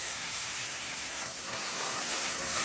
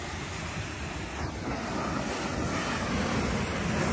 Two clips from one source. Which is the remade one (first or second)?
first